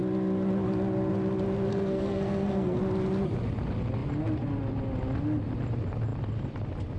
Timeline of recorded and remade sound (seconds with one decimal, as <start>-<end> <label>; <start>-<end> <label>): 0.0-1.7 recorded; 1.7-2.8 remade; 2.8-7.0 recorded